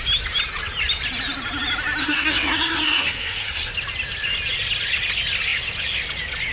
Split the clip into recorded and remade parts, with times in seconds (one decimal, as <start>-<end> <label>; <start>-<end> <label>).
0.0-2.0 recorded; 2.0-3.7 remade; 3.7-6.5 recorded